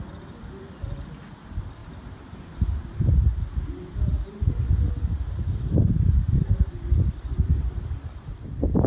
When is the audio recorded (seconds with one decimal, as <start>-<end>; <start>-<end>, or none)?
0.0-1.8; 3.0-8.9